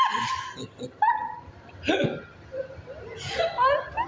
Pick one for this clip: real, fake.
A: real